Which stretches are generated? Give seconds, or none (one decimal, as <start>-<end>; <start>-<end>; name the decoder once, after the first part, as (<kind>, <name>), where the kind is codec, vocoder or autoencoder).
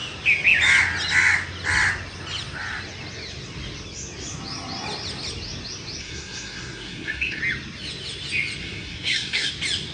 6.0-7.4 (codec, SNAC); 8.6-9.5